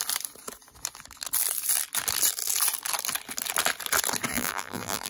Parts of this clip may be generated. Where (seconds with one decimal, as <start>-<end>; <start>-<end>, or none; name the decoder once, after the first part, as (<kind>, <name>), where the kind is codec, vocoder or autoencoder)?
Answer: 4.3-5.1 (vocoder, BigVGAN v2)